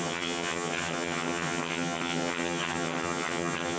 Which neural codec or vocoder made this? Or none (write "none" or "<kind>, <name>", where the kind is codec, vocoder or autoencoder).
vocoder, HiFi-GAN